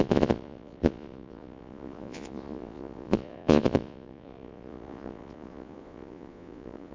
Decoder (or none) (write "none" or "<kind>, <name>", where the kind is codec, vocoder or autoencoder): vocoder, Vocos